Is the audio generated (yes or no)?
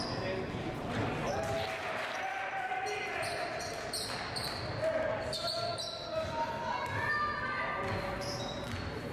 no